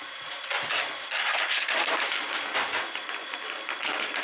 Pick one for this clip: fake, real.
fake